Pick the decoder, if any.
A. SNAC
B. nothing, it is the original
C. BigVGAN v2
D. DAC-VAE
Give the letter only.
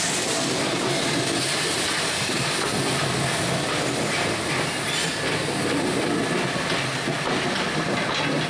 B